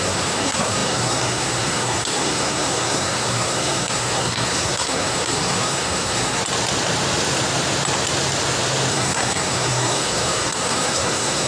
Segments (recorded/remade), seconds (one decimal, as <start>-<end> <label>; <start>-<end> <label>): 0.0-6.4 remade; 6.4-8.9 recorded; 8.9-11.5 remade